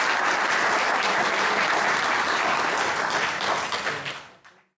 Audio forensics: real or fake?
real